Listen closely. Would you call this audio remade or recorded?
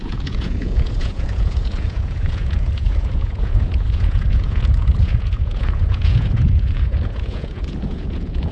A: remade